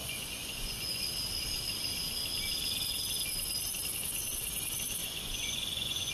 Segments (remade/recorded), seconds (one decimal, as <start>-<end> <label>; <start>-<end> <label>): 0.0-1.0 remade; 1.0-5.0 recorded; 5.0-6.1 remade